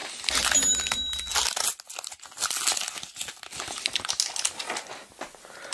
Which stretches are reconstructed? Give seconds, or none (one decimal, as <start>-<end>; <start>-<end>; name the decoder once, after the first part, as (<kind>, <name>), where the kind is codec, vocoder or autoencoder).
none